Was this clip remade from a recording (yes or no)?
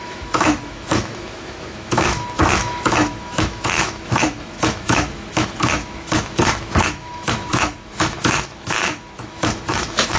yes